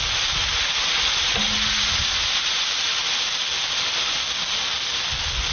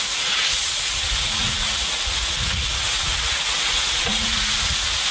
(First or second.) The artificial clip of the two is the second